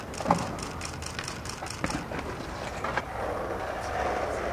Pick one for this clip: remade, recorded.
recorded